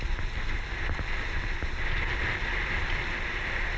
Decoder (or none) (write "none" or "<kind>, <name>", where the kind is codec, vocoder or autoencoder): none